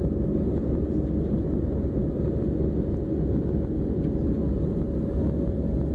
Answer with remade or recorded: recorded